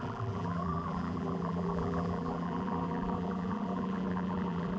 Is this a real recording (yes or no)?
no